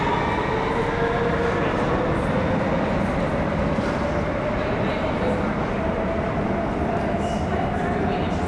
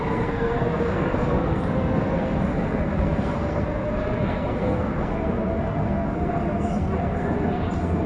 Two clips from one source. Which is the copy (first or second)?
second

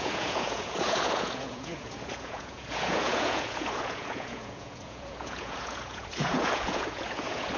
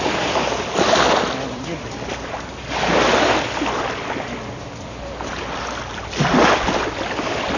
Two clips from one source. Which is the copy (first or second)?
first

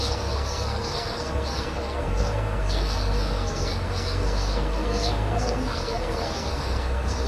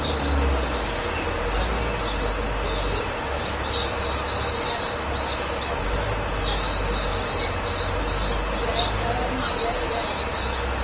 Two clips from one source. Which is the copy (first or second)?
first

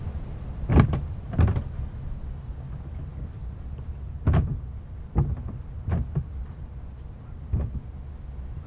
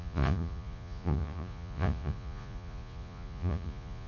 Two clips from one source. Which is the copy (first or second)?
second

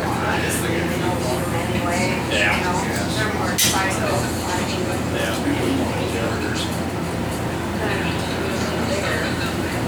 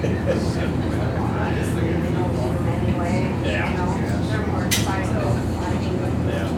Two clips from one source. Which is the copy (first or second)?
second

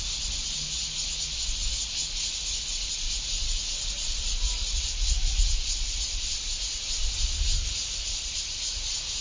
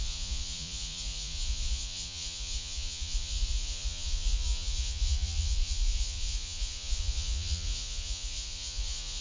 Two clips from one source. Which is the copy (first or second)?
second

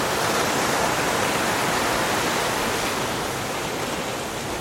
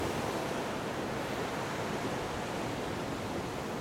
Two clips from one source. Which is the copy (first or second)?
second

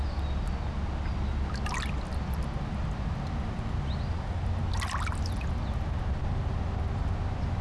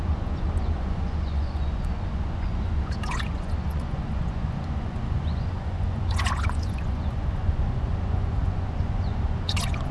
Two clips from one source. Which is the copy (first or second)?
second